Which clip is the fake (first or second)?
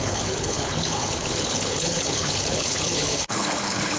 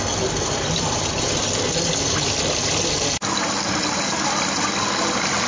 first